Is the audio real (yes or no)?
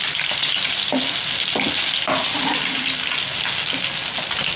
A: yes